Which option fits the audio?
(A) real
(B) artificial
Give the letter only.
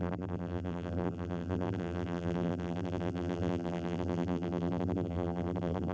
B